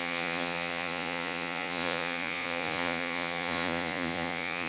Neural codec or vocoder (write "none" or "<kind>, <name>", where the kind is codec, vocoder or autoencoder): vocoder, Vocos